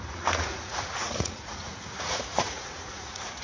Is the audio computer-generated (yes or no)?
yes